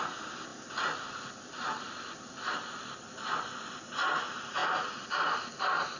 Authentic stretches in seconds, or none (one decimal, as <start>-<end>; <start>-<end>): 0.0-0.5; 2.7-4.6